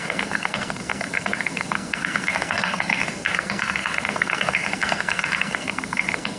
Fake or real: fake